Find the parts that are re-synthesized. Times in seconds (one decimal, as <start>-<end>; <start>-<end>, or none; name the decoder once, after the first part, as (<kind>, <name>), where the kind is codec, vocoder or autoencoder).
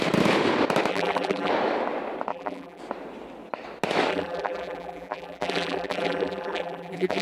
0.9-1.5 (vocoder, BigVGAN v2); 2.3-2.8; 4.1-7.2